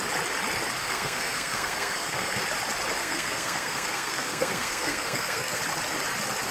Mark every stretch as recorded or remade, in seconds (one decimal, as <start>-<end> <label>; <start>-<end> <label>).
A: 0.0-0.8 recorded; 0.8-2.4 remade; 2.4-3.0 recorded; 3.0-5.6 remade; 5.6-6.5 recorded